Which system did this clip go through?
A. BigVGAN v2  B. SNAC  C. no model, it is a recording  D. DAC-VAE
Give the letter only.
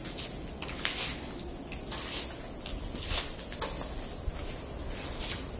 C